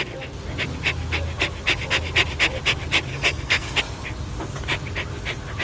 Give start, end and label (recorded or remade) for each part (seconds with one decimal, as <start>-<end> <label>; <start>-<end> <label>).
0.0-3.1 recorded; 3.1-3.8 remade; 3.8-5.6 recorded